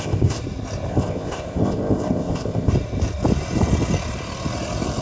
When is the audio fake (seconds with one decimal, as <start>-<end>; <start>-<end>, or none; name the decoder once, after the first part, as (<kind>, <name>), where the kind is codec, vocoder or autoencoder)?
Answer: 0.0-0.4 (codec, ZipCodec); 0.9-2.7